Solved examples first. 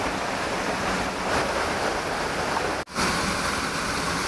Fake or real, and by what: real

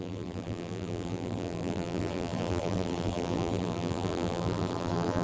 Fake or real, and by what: fake, vocoder, BigVGAN v2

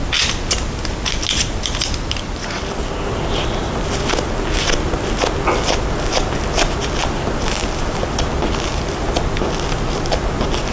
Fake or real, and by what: real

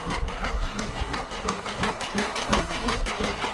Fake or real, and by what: fake, codec, SNAC